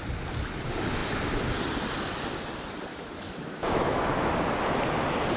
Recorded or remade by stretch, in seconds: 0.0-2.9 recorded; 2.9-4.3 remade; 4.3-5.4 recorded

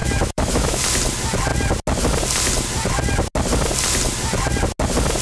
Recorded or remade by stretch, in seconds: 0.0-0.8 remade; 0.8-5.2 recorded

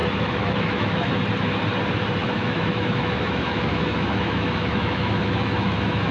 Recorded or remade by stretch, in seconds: 0.0-1.1 remade; 1.1-2.2 recorded; 2.2-6.1 remade

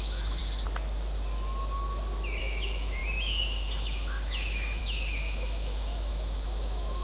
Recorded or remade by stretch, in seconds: 0.0-0.4 remade; 0.4-2.4 recorded; 2.4-7.0 remade

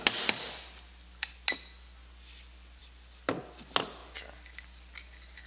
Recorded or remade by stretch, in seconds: 0.0-5.5 recorded

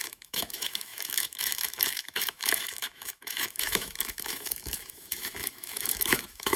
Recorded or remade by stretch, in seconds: 0.0-6.6 remade

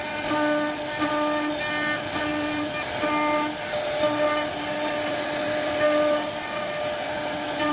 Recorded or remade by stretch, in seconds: 0.0-7.7 recorded